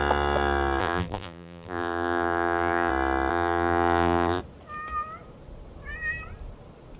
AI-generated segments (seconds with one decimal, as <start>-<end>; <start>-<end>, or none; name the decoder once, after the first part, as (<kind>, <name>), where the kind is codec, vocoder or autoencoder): 0.8-2.9 (vocoder, BigVGAN v2); 3.3-4.4